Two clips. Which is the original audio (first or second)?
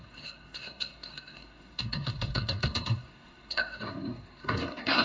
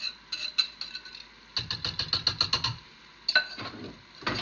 second